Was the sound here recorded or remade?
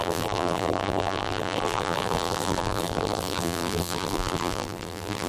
remade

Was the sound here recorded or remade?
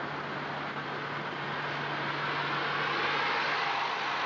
recorded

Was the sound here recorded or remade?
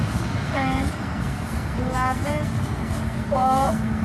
remade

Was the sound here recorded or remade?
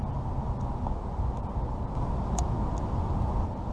recorded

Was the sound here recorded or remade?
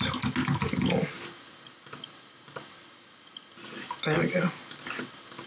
recorded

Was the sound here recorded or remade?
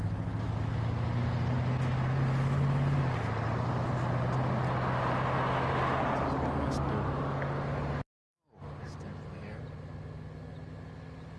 recorded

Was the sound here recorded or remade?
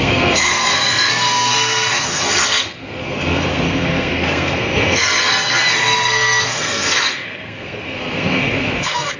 remade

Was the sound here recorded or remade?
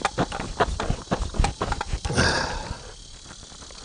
recorded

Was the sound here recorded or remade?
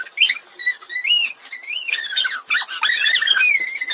recorded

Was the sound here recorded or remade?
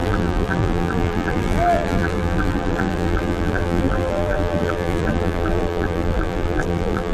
remade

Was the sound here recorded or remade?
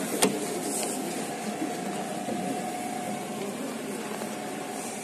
recorded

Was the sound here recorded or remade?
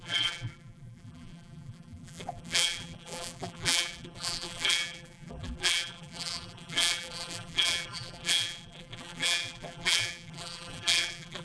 remade